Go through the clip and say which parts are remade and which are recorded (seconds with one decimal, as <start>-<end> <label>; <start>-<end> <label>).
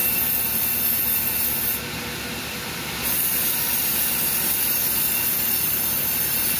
0.0-6.6 recorded